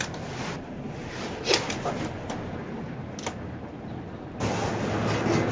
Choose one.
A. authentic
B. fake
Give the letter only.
A